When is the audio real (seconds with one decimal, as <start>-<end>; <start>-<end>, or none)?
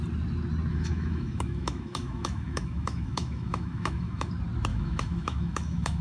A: 0.0-0.7; 4.3-4.7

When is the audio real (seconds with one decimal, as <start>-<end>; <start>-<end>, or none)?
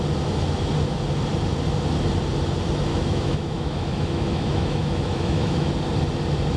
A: 0.0-2.9; 5.7-6.6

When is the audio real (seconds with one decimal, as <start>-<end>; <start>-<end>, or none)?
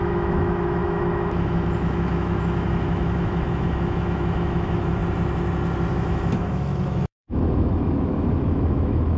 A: 5.0-5.9